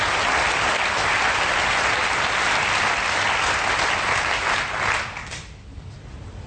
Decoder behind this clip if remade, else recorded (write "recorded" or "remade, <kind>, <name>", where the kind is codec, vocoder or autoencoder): recorded